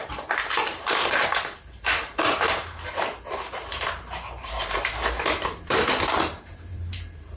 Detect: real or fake fake